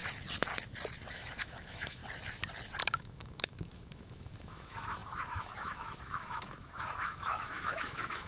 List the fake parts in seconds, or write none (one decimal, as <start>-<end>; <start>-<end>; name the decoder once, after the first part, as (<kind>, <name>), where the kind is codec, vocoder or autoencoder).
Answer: 1.1-2.0 (autoencoder, DAC-VAE); 2.8-8.3